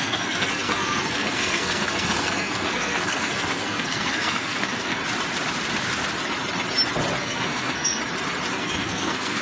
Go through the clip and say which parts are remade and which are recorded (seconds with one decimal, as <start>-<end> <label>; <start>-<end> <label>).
0.0-5.0 remade; 5.0-7.2 recorded; 7.2-8.0 remade; 8.0-8.5 recorded; 8.5-9.4 remade